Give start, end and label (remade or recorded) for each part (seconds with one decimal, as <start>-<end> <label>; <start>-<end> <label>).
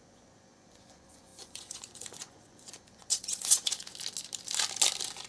0.0-3.9 remade; 3.9-5.3 recorded